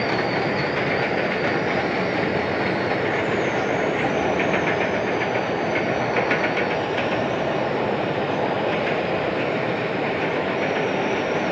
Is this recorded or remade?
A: recorded